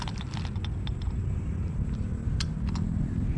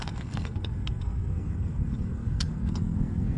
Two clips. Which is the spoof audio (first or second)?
second